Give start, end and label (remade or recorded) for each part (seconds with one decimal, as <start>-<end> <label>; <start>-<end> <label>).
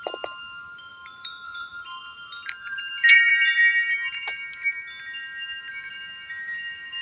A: 0.0-3.6 remade; 3.6-5.7 recorded; 5.7-7.0 remade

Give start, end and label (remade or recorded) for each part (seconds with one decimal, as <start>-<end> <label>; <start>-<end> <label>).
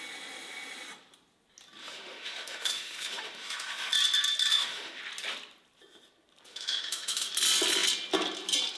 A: 0.0-1.8 recorded; 1.8-3.9 remade; 3.9-4.5 recorded; 4.5-5.0 remade; 5.0-6.5 recorded; 6.5-7.3 remade; 7.3-8.8 recorded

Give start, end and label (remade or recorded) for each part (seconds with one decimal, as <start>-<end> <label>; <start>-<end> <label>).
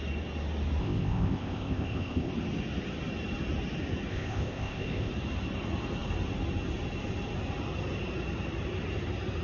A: 0.0-0.8 recorded; 0.8-2.3 remade; 2.3-4.1 recorded; 4.1-5.1 remade; 5.1-9.4 recorded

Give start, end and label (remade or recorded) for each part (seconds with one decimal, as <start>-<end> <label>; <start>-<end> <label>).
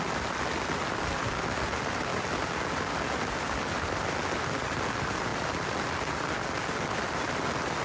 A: 0.0-7.8 recorded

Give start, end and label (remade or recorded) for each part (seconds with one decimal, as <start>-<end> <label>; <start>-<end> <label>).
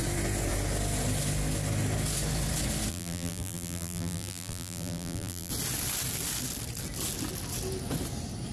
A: 0.0-2.9 recorded; 2.9-5.5 remade; 5.5-8.5 recorded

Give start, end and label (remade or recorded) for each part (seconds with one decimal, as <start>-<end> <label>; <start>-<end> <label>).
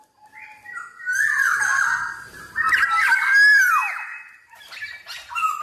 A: 0.0-5.6 recorded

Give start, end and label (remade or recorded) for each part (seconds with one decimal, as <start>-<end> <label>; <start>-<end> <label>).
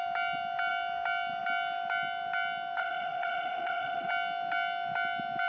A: 0.0-2.8 recorded; 2.8-4.1 remade; 4.1-5.5 recorded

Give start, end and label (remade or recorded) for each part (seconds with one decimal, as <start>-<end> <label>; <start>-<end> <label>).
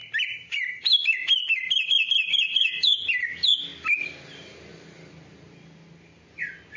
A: 0.0-2.5 recorded; 2.5-3.2 remade; 3.2-6.8 recorded